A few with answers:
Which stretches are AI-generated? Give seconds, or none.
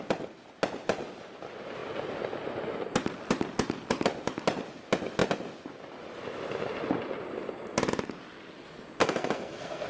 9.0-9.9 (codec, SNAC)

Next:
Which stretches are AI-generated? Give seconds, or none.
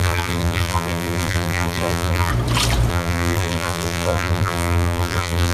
0.0-2.3 (vocoder, BigVGAN v2); 2.9-5.5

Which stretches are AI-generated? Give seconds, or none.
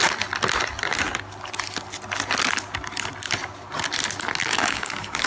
4.4-5.3 (codec, DAC)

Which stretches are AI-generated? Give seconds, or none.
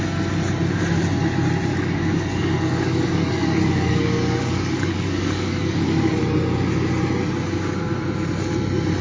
1.7-6.2 (codec, DAC)